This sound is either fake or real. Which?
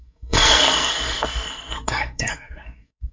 fake